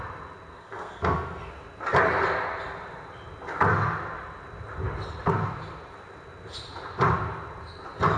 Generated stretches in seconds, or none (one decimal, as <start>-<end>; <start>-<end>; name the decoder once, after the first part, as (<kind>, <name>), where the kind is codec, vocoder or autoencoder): 0.5-1.5 (codec, SNAC)